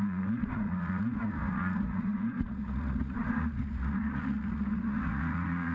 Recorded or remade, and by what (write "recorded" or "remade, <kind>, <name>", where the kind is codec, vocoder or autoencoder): remade, vocoder, Vocos